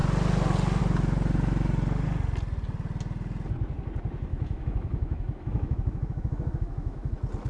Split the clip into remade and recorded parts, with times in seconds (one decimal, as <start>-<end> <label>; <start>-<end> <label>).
0.0-4.3 recorded; 4.3-7.1 remade; 7.1-7.5 recorded